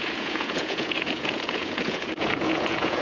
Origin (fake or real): fake